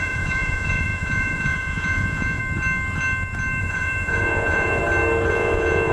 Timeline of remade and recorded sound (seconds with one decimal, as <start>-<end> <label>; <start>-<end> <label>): 0.0-2.4 remade; 2.4-3.6 recorded; 3.6-4.8 remade; 4.8-5.3 recorded; 5.3-5.9 remade